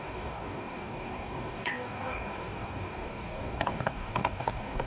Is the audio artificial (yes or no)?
yes